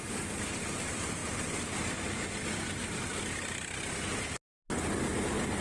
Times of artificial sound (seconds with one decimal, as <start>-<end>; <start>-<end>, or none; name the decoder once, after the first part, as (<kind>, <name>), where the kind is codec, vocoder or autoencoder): none